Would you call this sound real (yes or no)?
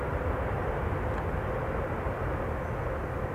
yes